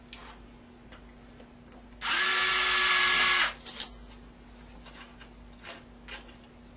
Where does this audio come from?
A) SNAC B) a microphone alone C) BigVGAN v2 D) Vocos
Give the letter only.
B